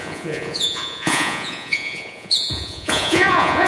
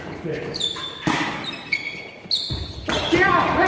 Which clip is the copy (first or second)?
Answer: first